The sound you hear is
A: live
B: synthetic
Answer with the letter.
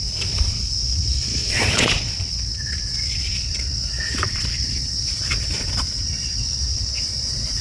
B